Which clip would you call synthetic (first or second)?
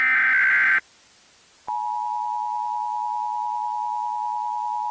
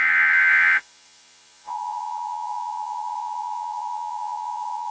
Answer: second